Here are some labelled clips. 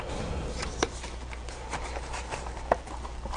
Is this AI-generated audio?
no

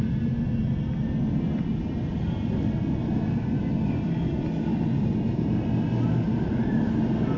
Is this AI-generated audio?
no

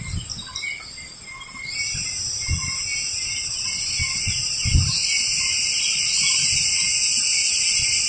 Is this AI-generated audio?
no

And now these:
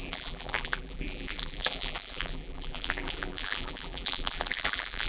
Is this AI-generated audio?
yes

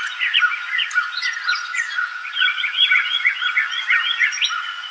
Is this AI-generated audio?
yes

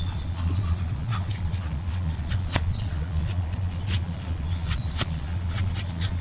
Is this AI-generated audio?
yes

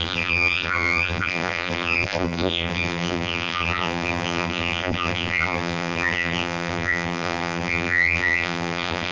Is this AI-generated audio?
yes